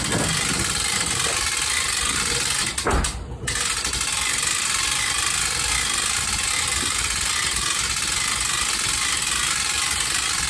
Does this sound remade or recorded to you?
recorded